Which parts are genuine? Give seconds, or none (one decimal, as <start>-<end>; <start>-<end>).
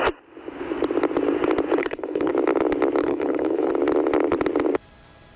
0.0-1.8; 2.3-3.0; 3.7-5.4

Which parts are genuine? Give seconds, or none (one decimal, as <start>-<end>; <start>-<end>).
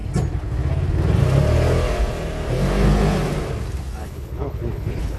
0.0-4.0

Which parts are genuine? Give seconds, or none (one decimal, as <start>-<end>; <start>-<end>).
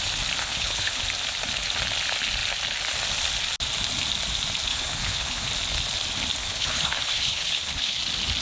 0.0-0.4; 1.0-4.7; 5.5-6.4; 8.0-8.4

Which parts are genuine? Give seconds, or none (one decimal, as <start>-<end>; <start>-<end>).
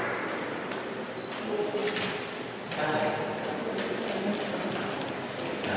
0.0-5.8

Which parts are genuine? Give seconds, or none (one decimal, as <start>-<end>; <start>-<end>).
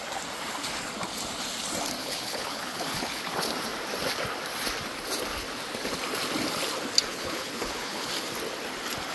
0.0-2.0; 3.2-7.1; 8.1-9.1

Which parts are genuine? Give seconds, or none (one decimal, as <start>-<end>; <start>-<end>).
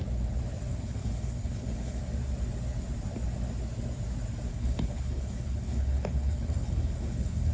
0.0-0.7; 2.0-4.5